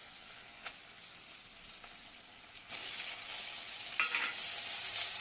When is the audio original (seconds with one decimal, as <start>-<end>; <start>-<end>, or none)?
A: 0.7-5.2